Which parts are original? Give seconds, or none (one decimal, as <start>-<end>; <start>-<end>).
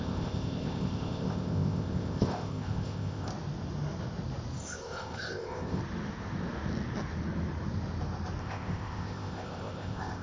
3.3-4.6; 5.8-8.4